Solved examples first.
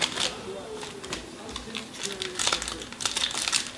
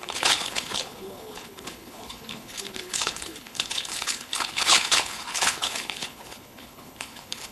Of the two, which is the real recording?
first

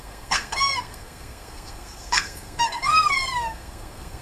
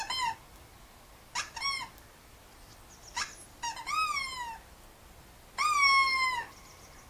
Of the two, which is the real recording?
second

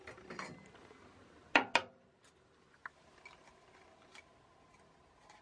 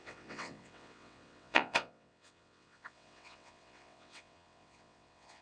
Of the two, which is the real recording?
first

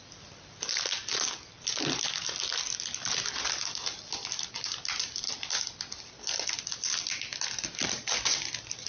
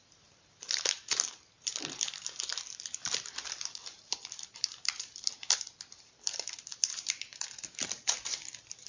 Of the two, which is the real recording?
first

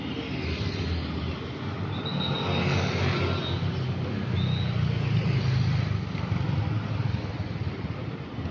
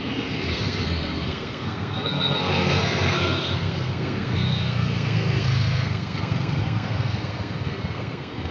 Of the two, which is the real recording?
first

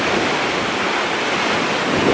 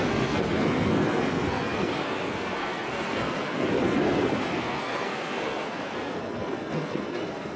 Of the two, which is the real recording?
first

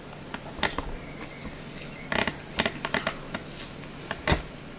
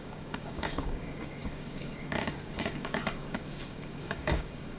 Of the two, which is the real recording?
first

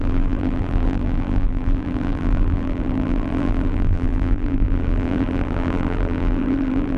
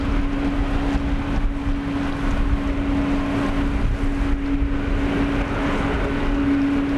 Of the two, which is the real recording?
second